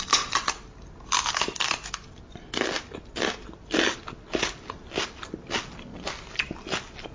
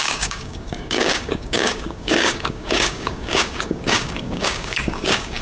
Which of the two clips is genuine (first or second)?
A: first